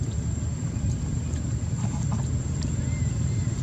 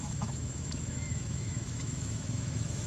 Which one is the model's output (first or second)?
second